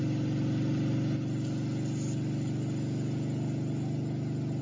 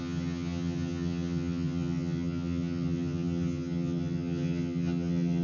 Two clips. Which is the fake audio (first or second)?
second